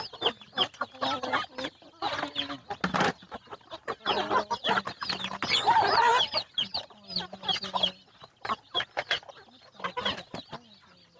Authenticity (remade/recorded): recorded